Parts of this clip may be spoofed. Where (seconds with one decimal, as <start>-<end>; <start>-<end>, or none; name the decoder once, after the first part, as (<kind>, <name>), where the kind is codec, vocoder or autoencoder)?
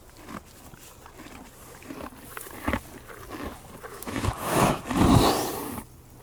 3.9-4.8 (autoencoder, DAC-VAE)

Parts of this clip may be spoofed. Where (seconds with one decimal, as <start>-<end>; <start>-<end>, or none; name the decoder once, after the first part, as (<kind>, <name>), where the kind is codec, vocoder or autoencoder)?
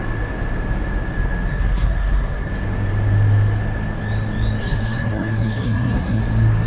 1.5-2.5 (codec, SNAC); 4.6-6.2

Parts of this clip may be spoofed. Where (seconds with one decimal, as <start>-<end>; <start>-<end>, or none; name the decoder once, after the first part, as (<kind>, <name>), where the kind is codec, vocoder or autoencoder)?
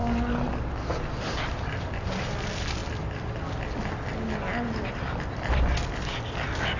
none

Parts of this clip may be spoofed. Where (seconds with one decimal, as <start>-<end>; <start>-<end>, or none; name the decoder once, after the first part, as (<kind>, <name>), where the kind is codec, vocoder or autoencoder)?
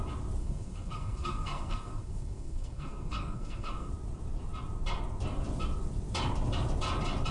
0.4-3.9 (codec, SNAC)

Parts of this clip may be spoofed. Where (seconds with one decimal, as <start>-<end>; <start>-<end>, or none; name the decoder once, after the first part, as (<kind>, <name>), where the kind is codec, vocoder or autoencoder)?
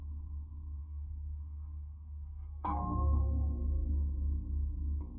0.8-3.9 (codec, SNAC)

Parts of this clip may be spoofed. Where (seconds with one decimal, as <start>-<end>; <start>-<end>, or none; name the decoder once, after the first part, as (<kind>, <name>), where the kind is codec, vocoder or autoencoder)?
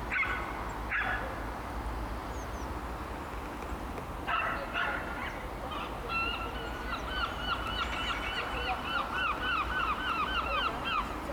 none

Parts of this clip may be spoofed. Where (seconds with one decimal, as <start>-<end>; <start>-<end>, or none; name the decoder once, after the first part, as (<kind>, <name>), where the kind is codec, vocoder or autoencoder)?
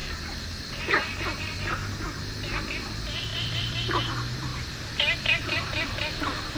3.3-4.1 (vocoder, BigVGAN v2); 4.5-6.6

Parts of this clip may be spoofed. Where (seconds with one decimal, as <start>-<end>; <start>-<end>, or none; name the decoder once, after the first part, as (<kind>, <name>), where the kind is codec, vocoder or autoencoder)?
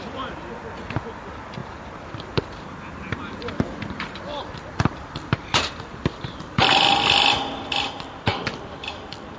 1.6-6.9 (vocoder, BigVGAN v2); 8.3-9.4